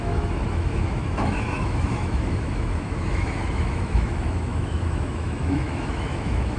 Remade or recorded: remade